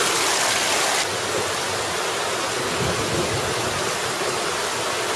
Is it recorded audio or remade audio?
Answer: recorded